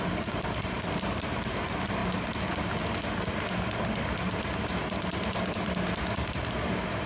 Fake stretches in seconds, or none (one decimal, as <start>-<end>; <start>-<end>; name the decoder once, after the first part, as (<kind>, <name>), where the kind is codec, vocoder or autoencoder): 0.0-2.0 (vocoder, BigVGAN v2); 6.3-7.1